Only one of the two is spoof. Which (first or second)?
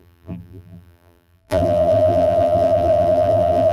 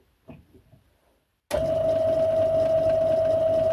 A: first